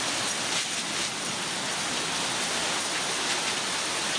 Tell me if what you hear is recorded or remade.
recorded